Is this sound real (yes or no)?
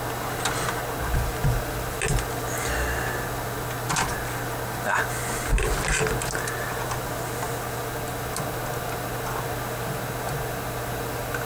yes